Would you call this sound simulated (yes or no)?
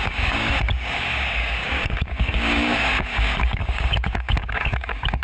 yes